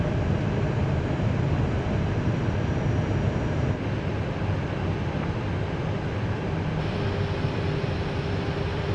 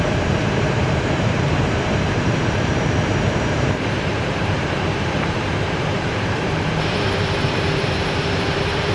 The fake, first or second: second